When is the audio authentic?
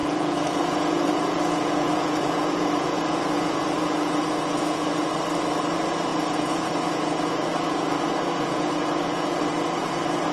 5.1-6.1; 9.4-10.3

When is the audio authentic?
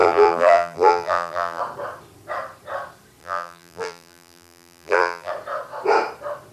1.6-3.2; 5.3-6.5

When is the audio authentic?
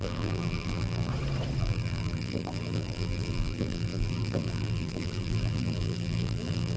1.1-1.6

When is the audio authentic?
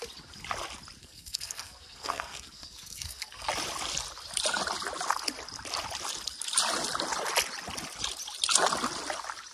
0.0-1.0; 3.5-9.5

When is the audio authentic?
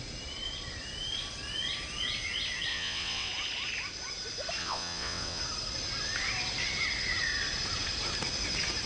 0.0-2.7; 3.3-4.6; 5.4-8.9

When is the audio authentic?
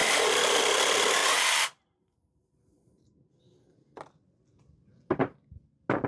0.6-1.2; 3.4-6.1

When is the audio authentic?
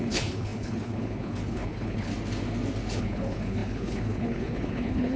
2.1-3.0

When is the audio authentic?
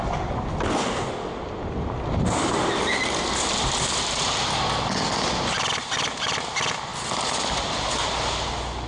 0.0-8.9